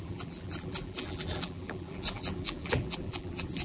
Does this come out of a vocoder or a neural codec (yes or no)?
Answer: yes